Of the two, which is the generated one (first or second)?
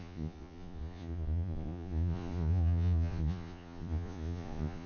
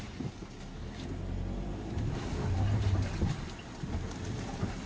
first